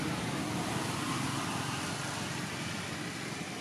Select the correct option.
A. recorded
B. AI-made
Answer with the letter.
A